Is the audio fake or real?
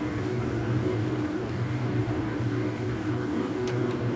fake